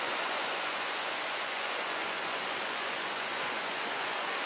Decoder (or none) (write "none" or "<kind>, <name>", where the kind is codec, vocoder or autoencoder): vocoder, Vocos